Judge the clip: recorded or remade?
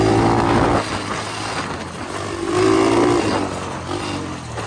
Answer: recorded